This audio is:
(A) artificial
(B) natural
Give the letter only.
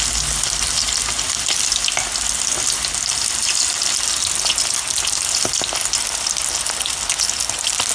B